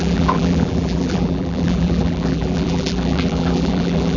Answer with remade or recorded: remade